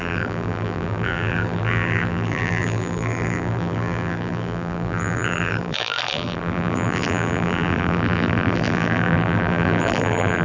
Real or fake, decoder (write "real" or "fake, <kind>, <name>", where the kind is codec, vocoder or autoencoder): fake, vocoder, BigVGAN v2